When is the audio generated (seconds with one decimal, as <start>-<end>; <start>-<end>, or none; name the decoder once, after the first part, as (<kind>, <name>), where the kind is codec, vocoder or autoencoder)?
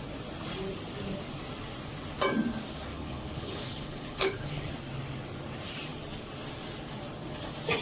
2.9-4.7 (codec, HILCodec)